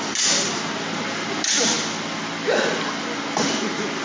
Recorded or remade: recorded